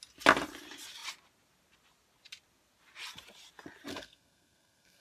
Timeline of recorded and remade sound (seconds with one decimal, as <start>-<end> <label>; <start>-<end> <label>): 0.0-3.9 recorded; 3.9-5.0 remade